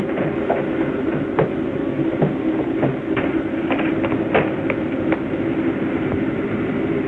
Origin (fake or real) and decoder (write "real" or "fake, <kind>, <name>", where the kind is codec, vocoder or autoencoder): real